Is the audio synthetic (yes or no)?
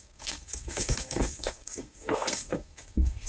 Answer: yes